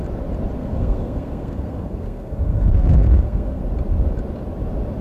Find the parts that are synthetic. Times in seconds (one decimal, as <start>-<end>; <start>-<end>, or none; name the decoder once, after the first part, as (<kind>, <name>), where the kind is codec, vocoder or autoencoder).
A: 0.6-3.6 (codec, SNAC)